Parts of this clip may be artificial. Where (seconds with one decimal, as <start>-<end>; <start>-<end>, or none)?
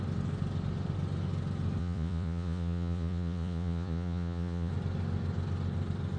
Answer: 1.8-4.7